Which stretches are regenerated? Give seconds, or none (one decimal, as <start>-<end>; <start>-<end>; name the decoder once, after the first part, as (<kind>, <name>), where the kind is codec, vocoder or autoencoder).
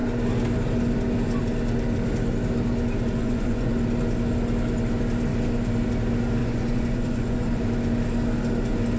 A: 3.2-3.7 (vocoder, Vocos); 6.4-7.6